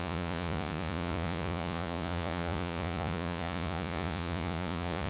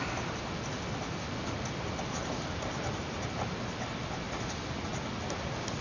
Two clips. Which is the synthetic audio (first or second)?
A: first